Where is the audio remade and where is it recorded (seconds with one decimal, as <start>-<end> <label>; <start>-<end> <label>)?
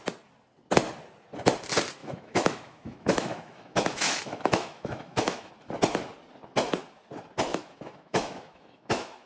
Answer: 0.0-2.0 recorded; 2.0-5.5 remade; 5.5-7.5 recorded; 7.5-9.3 remade